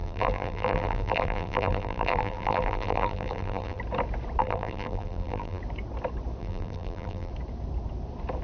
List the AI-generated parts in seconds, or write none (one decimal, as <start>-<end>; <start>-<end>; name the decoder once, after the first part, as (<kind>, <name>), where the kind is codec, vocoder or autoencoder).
0.0-3.8 (vocoder, BigVGAN v2); 4.4-5.6; 6.4-7.3